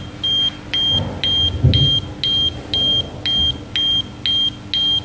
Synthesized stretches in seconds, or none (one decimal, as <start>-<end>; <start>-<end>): none